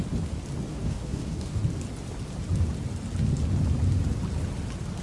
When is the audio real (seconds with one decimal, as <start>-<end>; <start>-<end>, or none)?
0.0-0.7; 1.6-5.0